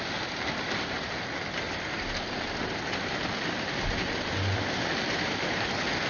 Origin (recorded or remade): recorded